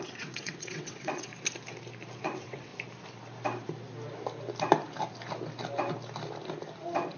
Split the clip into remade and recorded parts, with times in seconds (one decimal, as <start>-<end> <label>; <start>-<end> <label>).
0.0-1.3 remade; 1.3-2.2 recorded; 2.2-2.7 remade; 2.7-7.2 recorded